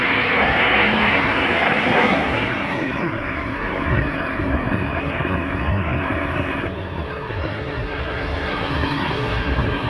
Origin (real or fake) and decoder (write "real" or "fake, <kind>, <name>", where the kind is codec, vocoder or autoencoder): fake, codec, SNAC